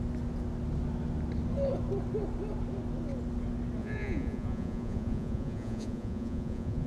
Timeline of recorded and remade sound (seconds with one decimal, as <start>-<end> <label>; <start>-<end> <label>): 0.0-3.8 recorded; 3.8-6.9 remade